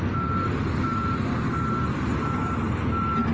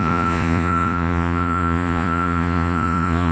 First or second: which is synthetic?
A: second